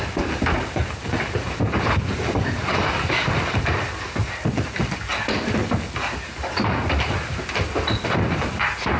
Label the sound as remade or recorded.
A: recorded